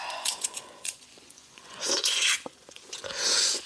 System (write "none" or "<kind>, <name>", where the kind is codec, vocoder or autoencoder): vocoder, Vocos